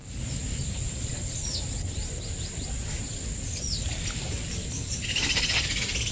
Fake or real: real